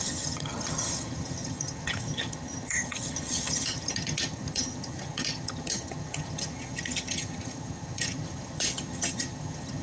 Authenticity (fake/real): fake